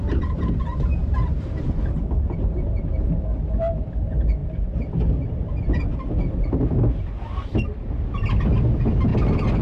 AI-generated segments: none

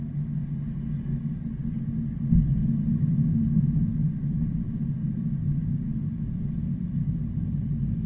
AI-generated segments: none

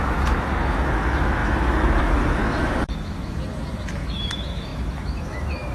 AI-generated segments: 0.0-5.7 (autoencoder, DAC-VAE)